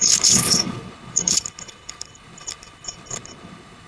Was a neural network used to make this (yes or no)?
yes